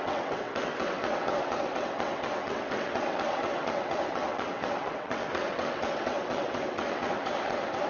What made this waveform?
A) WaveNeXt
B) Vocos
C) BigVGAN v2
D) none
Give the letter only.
A